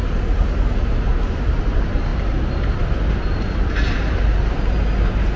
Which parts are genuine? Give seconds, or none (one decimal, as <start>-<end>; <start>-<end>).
0.0-5.4

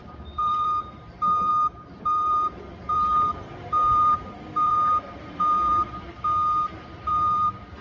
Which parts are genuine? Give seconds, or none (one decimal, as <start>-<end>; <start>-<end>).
1.5-2.0; 5.7-6.8

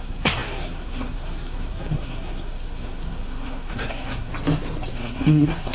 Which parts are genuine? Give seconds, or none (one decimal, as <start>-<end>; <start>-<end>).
4.3-4.9

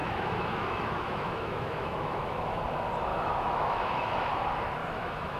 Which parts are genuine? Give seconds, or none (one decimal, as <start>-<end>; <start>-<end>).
2.6-3.1; 4.3-4.8

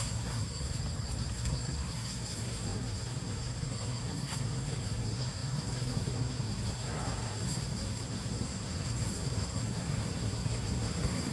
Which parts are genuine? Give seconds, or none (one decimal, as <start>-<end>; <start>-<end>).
0.8-1.3

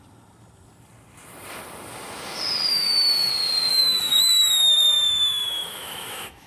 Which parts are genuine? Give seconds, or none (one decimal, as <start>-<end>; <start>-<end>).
0.0-2.7; 3.3-3.7

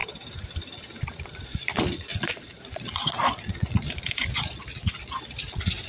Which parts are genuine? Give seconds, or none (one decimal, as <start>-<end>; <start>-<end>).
0.0-1.2